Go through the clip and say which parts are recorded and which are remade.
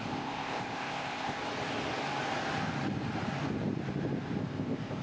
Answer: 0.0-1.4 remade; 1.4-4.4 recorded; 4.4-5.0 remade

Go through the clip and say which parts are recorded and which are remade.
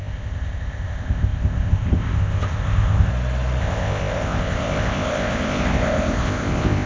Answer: 0.0-3.1 remade; 3.1-3.6 recorded; 3.6-6.9 remade